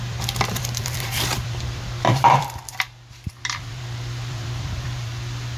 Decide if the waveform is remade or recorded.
remade